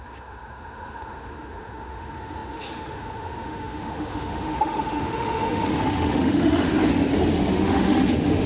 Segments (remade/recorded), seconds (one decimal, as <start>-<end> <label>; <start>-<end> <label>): 0.0-6.7 remade; 6.7-7.5 recorded; 7.5-8.5 remade